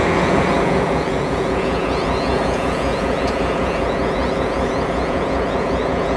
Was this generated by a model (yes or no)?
yes